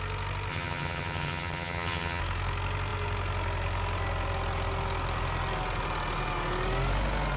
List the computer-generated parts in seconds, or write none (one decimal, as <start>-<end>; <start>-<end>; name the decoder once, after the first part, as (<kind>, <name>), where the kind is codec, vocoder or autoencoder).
0.5-2.2 (vocoder, HiFi-GAN)